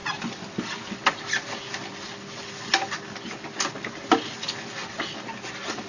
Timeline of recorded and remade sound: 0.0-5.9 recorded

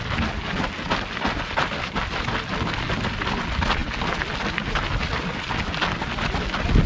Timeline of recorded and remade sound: 0.0-6.9 recorded

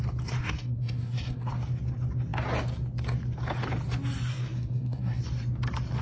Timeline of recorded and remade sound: 0.0-0.4 recorded; 0.4-1.5 remade; 1.5-4.3 recorded; 4.3-5.2 remade; 5.2-6.0 recorded

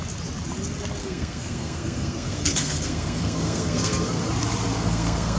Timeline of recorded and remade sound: 0.0-1.0 recorded; 1.0-4.2 remade; 4.2-4.7 recorded; 4.7-5.4 remade

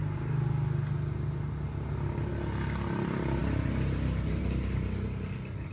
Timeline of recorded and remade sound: 0.0-5.7 recorded

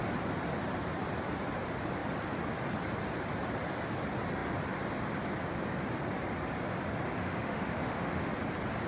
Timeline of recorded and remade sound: 0.0-7.2 recorded; 7.2-8.3 remade; 8.3-8.9 recorded

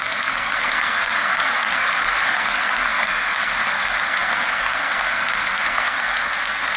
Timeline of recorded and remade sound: 0.0-6.8 remade

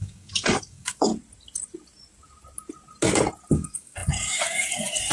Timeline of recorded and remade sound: 0.0-1.1 remade; 1.1-3.5 recorded; 3.5-5.1 remade